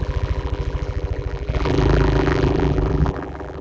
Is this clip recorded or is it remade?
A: remade